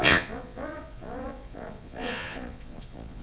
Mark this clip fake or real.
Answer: fake